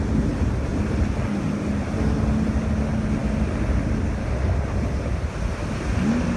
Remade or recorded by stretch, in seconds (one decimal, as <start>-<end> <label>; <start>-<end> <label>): 0.0-6.4 recorded